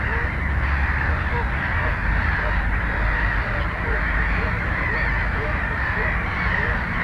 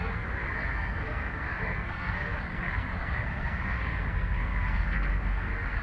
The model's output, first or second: second